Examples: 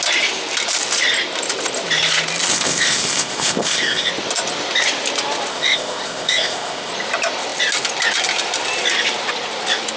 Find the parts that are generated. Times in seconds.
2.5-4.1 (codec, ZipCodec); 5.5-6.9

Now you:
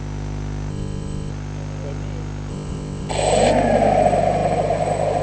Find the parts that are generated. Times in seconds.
0.7-1.3 (codec, ZipCodec); 2.5-3.1

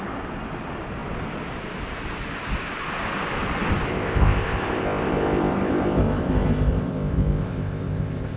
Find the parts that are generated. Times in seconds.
3.9-8.4 (codec, ZipCodec)

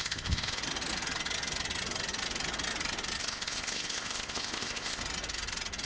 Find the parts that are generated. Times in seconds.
0.0-0.6 (codec, ZipCodec); 3.2-5.0